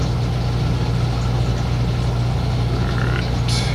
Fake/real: real